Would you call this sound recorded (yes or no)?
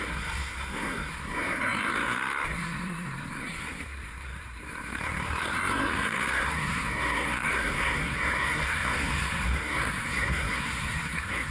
no